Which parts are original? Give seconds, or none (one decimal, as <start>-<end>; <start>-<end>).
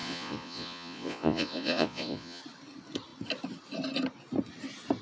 2.4-5.0